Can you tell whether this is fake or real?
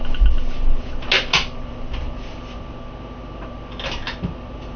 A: real